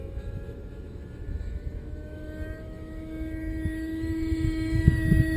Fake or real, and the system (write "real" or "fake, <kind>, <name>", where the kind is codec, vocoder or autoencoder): fake, autoencoder, DAC-VAE